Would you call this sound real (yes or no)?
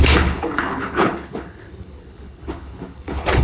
no